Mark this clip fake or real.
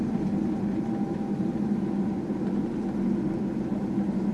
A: real